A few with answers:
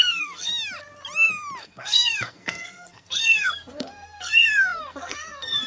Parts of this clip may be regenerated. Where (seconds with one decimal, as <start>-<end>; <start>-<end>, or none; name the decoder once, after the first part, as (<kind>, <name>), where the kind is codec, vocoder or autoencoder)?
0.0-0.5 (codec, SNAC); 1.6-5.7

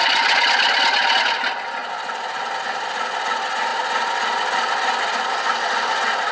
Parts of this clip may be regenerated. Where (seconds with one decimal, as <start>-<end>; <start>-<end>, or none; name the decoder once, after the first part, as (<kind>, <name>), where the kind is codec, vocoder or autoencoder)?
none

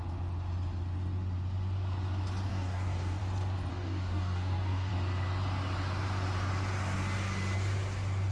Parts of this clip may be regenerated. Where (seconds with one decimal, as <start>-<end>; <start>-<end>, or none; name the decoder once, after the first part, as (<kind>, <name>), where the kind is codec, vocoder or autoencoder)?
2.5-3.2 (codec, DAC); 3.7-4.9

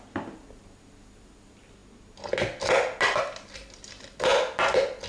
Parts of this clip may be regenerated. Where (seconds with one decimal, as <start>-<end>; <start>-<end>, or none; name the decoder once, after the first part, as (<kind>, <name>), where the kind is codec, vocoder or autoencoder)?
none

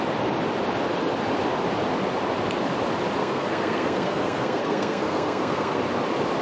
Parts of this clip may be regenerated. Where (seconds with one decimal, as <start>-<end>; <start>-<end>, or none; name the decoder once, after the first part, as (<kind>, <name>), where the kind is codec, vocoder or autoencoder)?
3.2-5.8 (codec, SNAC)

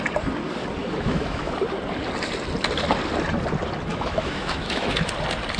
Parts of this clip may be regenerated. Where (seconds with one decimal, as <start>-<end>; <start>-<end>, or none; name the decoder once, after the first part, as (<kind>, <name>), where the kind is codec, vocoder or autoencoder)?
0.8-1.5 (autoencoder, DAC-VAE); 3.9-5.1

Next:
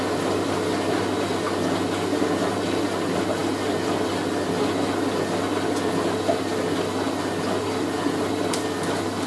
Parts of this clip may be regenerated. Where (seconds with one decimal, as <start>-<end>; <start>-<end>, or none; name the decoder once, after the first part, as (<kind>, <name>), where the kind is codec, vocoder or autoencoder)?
none

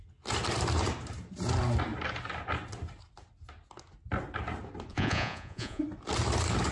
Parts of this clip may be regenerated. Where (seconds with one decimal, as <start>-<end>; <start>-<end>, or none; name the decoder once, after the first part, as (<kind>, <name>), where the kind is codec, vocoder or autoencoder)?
4.9-5.8 (vocoder, Vocos)